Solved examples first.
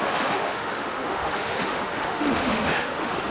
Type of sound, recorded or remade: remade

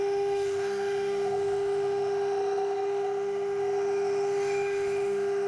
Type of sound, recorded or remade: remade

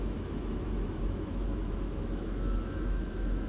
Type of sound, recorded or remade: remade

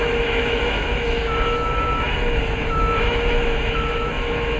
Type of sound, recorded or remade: remade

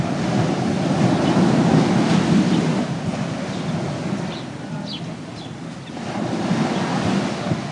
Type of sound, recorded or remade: recorded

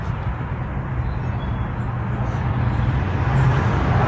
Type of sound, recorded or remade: recorded